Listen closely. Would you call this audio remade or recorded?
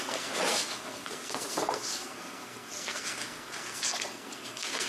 remade